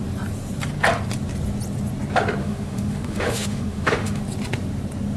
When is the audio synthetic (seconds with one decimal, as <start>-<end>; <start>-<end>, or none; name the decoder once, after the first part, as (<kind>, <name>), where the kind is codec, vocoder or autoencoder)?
2.4-4.2 (autoencoder, DAC-VAE)